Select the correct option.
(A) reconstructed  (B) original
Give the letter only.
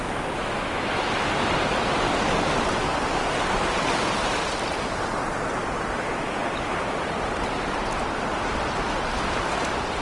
B